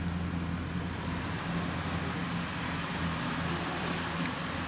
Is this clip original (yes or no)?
yes